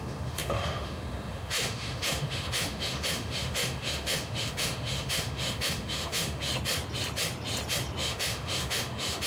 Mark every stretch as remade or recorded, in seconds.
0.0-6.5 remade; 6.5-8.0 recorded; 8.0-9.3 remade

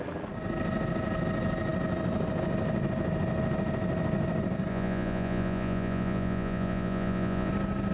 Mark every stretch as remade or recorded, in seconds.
0.0-4.7 recorded; 4.7-7.5 remade; 7.5-7.9 recorded

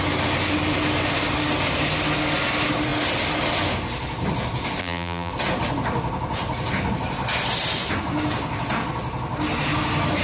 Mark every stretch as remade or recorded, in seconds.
0.0-4.8 recorded; 4.8-5.3 remade; 5.3-10.2 recorded

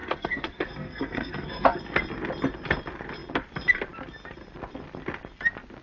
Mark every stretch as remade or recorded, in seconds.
0.0-1.8 remade; 1.8-5.8 recorded

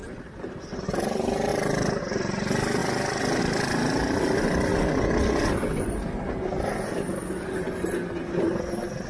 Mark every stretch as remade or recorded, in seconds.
0.0-0.8 recorded; 0.8-1.5 remade; 1.5-2.0 recorded; 2.0-4.7 remade; 4.7-9.1 recorded